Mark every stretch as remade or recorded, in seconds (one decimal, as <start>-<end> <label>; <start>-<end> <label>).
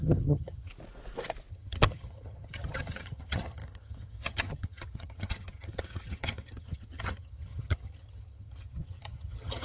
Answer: 0.0-0.7 remade; 0.7-1.5 recorded; 1.5-9.6 remade